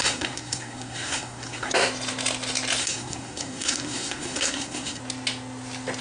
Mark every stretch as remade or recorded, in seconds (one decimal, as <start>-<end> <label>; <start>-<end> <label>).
0.0-1.7 remade; 1.7-2.8 recorded; 2.8-5.0 remade; 5.0-6.0 recorded